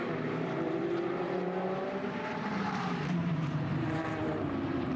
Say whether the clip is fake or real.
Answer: fake